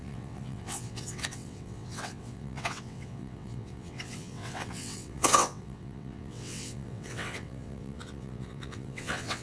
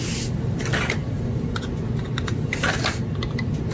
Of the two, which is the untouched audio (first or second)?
second